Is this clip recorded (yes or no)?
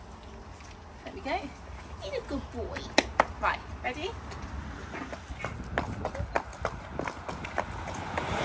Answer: yes